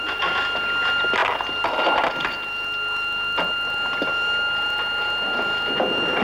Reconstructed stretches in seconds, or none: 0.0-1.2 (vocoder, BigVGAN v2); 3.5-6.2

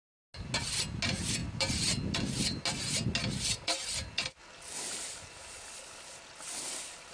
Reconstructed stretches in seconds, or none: none